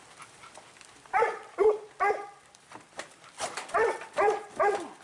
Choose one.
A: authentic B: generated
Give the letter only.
B